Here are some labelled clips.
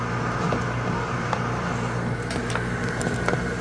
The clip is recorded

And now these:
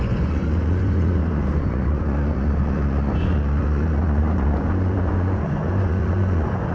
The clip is remade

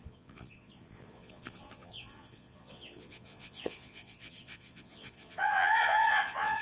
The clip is remade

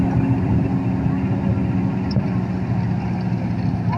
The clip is recorded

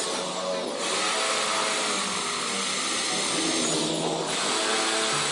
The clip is recorded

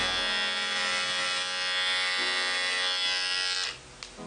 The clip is recorded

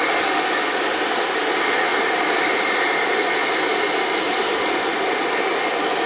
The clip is recorded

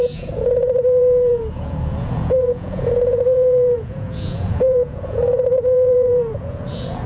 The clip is remade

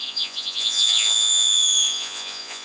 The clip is remade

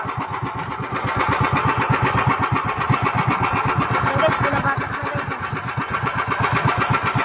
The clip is recorded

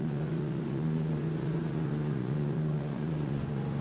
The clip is remade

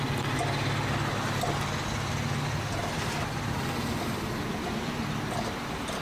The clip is recorded